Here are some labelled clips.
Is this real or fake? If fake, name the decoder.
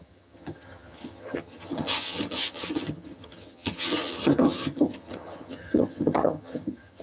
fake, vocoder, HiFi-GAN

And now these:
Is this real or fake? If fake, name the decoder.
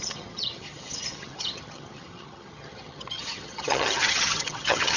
fake, vocoder, HiFi-GAN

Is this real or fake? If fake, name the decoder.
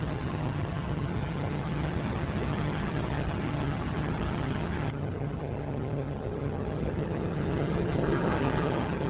fake, vocoder, HiFi-GAN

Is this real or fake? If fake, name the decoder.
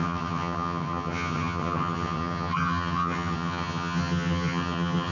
fake, vocoder, HiFi-GAN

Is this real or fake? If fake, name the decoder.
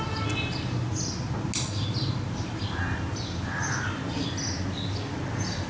real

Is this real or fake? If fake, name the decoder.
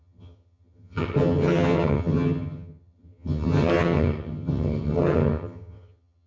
fake, vocoder, HiFi-GAN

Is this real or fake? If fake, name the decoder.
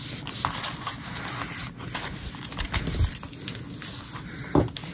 real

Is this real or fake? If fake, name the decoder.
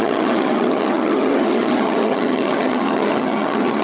fake, vocoder, HiFi-GAN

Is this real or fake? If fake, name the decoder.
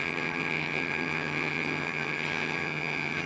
fake, vocoder, HiFi-GAN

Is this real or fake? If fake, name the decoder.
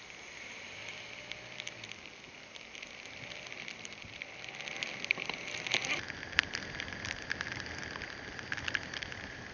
real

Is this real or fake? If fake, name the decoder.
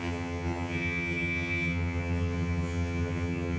fake, vocoder, HiFi-GAN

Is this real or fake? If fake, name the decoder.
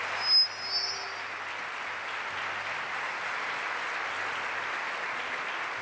real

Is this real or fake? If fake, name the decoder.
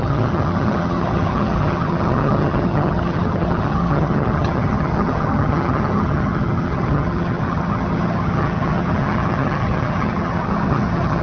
fake, vocoder, HiFi-GAN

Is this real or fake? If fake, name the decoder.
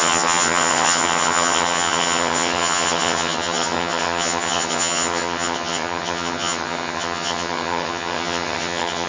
fake, vocoder, HiFi-GAN